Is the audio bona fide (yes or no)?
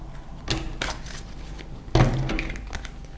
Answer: yes